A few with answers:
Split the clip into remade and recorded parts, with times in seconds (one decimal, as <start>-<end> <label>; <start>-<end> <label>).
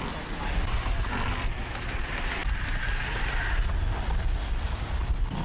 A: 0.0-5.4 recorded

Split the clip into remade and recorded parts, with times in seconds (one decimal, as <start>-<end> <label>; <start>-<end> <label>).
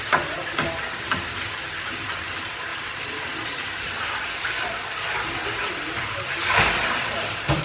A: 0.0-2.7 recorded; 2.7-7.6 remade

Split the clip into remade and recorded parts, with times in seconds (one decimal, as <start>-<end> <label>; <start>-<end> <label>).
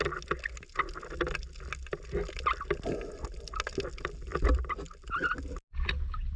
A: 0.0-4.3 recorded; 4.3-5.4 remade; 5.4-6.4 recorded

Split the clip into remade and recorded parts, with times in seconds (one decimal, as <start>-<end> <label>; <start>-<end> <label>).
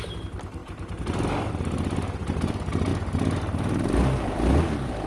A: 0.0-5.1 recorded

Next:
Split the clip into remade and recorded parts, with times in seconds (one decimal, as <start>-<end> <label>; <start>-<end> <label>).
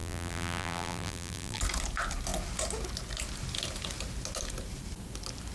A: 0.0-1.6 remade; 1.6-5.5 recorded